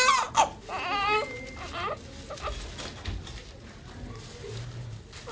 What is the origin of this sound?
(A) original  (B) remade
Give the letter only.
A